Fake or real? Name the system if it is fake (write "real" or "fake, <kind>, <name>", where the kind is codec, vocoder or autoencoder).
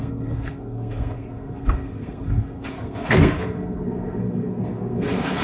fake, codec, SNAC